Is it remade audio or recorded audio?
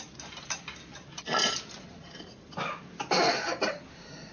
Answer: recorded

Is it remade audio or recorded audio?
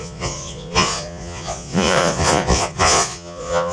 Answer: remade